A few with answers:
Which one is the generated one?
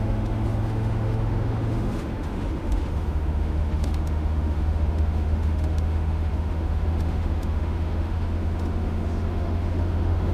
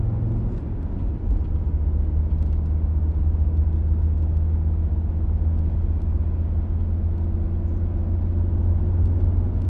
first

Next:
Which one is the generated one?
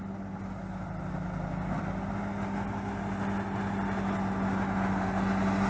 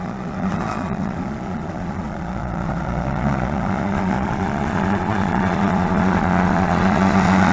second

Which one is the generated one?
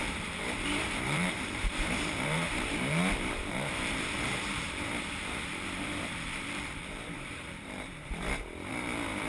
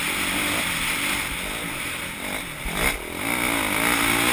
first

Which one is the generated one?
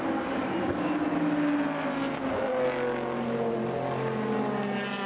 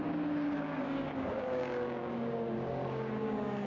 second